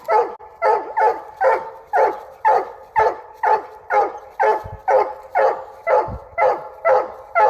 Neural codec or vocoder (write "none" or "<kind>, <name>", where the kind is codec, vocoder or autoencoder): none